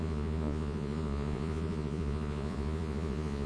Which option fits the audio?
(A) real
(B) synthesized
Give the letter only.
B